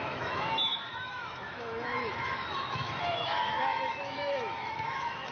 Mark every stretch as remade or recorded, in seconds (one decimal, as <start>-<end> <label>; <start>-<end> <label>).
0.0-5.3 remade